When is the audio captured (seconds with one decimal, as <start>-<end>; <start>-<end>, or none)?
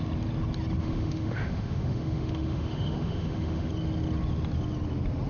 0.0-0.8; 3.7-5.3